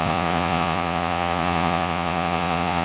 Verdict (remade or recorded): remade